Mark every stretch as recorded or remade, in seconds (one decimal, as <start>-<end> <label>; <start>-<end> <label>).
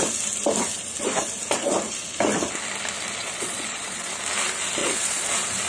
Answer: 0.0-3.2 recorded; 3.2-4.1 remade; 4.1-4.8 recorded; 4.8-5.3 remade; 5.3-5.7 recorded